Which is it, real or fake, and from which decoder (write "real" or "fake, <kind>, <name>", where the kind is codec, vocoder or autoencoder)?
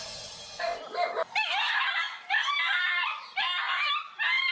real